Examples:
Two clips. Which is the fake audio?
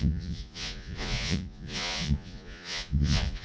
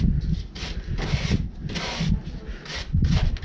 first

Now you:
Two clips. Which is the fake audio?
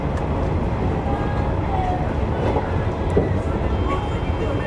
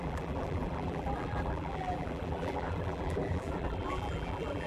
second